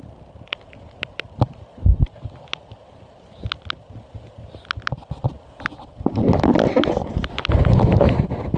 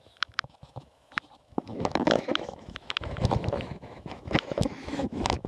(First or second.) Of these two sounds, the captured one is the first